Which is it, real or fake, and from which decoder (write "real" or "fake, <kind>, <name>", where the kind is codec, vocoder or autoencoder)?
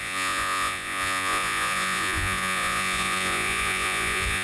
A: fake, vocoder, Vocos